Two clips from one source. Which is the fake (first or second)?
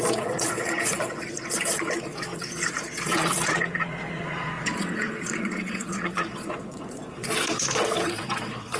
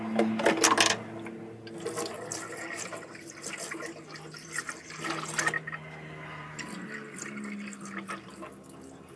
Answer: first